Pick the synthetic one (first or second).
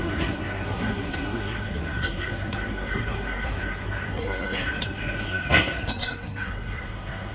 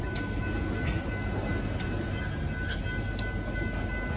first